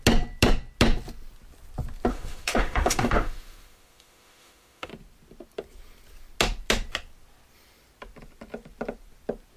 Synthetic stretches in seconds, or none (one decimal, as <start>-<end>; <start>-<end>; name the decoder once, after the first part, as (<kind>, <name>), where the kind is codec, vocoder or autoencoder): 2.1-4.9 (autoencoder, DAC-VAE)